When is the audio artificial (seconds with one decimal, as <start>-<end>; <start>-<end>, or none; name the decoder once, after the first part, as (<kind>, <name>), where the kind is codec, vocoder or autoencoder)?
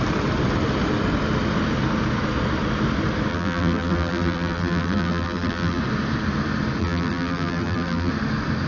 3.3-5.8 (vocoder, BigVGAN v2); 6.8-8.1